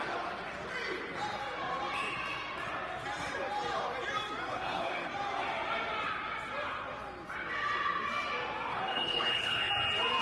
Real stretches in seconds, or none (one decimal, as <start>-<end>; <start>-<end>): 0.0-4.5; 5.1-8.7; 9.7-10.2